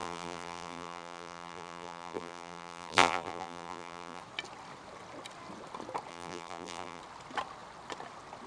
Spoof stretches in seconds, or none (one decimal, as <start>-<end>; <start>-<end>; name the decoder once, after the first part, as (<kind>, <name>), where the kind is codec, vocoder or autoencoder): 0.0-4.2 (vocoder, BigVGAN v2); 6.1-7.0